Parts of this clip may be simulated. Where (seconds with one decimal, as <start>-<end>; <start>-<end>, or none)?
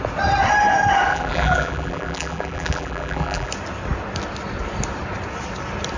1.1-3.5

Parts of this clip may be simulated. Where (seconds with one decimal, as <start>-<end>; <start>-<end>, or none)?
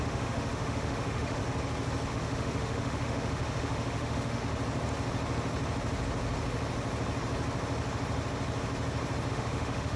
0.0-1.4; 2.1-4.4; 9.3-10.0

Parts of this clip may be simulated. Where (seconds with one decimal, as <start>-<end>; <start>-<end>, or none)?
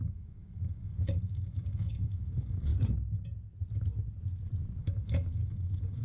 0.0-2.7; 4.8-6.0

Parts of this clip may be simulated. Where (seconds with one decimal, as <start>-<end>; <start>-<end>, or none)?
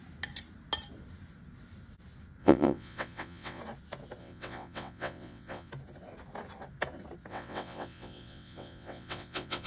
2.4-3.6; 4.2-5.7; 7.3-9.7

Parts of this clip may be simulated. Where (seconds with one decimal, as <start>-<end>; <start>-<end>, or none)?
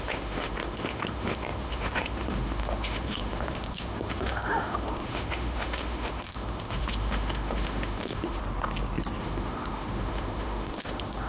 0.0-8.4; 9.2-11.3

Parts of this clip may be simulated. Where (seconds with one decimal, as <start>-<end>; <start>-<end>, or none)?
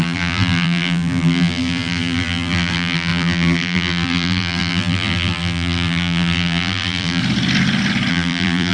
0.0-7.2; 8.1-8.7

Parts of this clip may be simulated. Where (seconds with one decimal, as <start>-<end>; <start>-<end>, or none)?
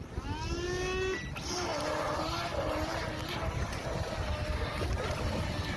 none